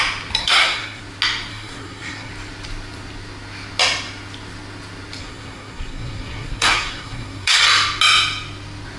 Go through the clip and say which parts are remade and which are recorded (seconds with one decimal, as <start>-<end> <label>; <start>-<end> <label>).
0.0-0.4 recorded; 0.4-1.0 remade; 1.0-1.5 recorded; 1.5-2.3 remade; 2.3-5.2 recorded; 5.2-7.6 remade; 7.6-9.0 recorded